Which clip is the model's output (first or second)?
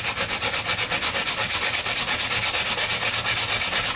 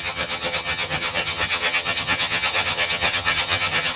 second